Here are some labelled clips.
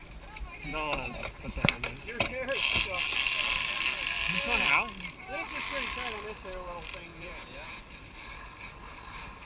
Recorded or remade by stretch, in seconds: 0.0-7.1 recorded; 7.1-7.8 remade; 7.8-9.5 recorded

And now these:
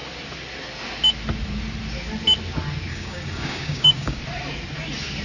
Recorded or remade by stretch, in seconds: 0.0-2.9 recorded; 2.9-4.2 remade; 4.2-5.2 recorded

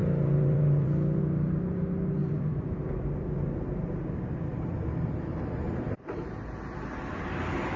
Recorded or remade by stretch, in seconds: 0.0-1.2 remade; 1.2-2.2 recorded; 2.2-5.4 remade; 5.4-7.8 recorded

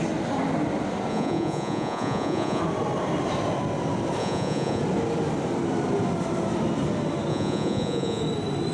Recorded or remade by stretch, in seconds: 0.0-1.1 recorded; 1.1-2.6 remade; 2.6-4.2 recorded; 4.2-4.8 remade; 4.8-7.3 recorded; 7.3-8.2 remade; 8.2-8.7 recorded

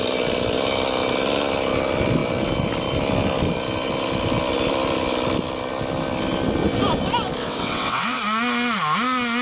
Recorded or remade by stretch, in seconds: 0.0-7.4 recorded; 7.4-8.2 remade; 8.2-9.4 recorded

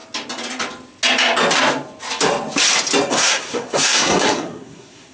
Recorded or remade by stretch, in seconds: 0.0-3.1 recorded; 3.1-5.1 remade

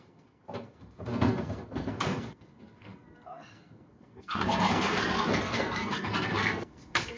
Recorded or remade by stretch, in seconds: 0.0-7.2 remade